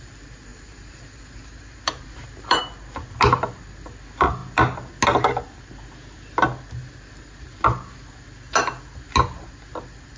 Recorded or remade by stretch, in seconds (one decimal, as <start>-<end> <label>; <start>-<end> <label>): 0.0-0.5 recorded; 0.5-2.6 remade; 2.6-10.2 recorded